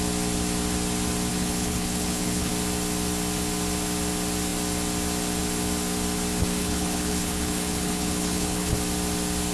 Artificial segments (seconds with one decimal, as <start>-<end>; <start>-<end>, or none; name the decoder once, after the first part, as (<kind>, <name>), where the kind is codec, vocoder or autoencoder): 1.3-2.5 (codec, HILCodec); 6.6-8.7

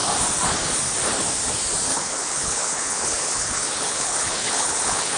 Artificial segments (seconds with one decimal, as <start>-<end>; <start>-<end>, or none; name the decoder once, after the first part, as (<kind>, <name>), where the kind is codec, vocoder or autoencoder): 1.9-5.2 (codec, HILCodec)

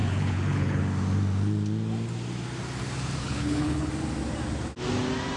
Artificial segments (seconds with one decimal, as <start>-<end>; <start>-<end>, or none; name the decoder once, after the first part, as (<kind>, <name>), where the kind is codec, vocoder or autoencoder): 0.0-0.8 (codec, HILCodec); 3.2-3.9

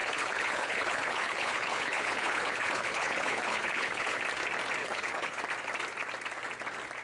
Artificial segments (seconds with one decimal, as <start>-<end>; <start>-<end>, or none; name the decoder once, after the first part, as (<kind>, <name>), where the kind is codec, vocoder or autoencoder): 0.0-4.2 (codec, HILCodec); 4.8-5.4

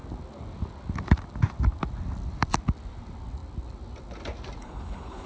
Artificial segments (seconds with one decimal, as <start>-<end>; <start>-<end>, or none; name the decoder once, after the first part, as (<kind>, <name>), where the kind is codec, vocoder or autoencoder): 4.6-5.3 (codec, HILCodec)

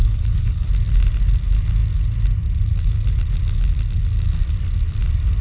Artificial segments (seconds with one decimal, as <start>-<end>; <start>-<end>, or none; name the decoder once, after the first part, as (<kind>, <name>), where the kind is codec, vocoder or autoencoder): 0.0-0.7 (codec, HILCodec)

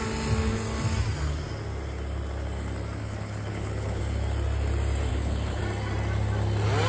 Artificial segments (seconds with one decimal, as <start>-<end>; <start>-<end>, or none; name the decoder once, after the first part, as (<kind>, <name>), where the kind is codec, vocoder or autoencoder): 3.0-4.0 (codec, HILCodec); 5.1-5.6